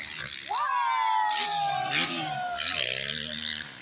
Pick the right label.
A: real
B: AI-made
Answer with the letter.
A